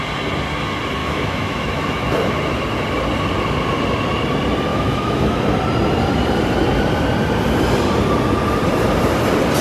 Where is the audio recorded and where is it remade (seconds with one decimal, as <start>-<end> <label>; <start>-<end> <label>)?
0.0-1.0 recorded; 1.0-2.1 remade; 2.1-4.7 recorded; 4.7-5.4 remade; 5.4-9.6 recorded